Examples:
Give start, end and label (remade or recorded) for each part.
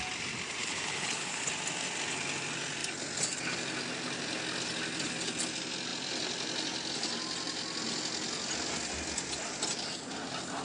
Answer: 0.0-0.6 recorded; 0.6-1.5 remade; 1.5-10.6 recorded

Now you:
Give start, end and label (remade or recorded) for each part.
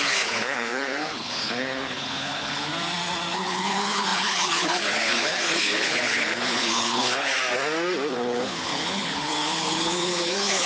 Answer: 0.0-2.7 remade; 2.7-3.3 recorded; 3.3-7.3 remade; 7.3-8.1 recorded; 8.1-10.7 remade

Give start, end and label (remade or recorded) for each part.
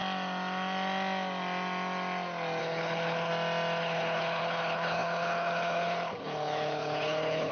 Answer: 0.0-2.6 recorded; 2.6-3.3 remade; 3.3-3.8 recorded; 3.8-7.5 remade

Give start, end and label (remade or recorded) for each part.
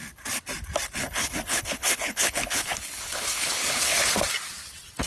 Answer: 0.0-1.0 recorded; 1.0-4.1 remade; 4.1-5.1 recorded